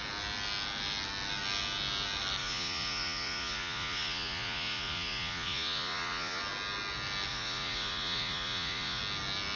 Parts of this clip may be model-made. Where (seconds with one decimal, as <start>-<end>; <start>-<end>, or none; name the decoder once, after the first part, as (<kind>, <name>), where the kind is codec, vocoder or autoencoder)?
2.4-6.4 (vocoder, Vocos); 7.3-9.0